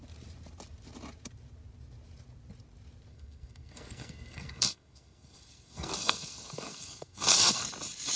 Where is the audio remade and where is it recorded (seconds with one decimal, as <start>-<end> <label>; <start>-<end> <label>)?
0.0-3.1 recorded; 3.1-7.7 remade; 7.7-8.2 recorded